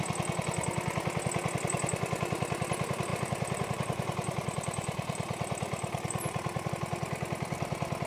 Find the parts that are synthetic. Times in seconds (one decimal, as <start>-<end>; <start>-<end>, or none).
3.1-6.7